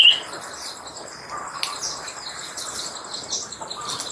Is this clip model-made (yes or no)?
no